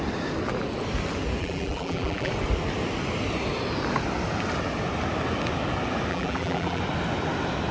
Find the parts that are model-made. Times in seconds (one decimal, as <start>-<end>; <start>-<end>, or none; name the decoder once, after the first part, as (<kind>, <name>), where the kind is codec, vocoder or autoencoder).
1.4-2.3 (vocoder, BigVGAN v2); 6.1-6.8